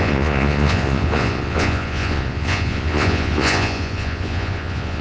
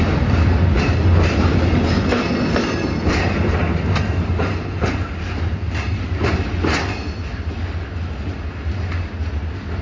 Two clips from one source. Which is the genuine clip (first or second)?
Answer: second